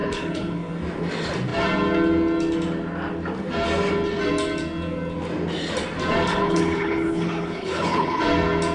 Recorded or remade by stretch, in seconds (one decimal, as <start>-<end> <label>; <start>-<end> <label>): 0.0-0.7 remade; 0.7-6.3 recorded; 6.3-8.2 remade; 8.2-8.7 recorded